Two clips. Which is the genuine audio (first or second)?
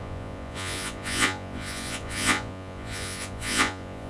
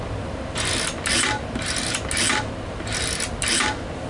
second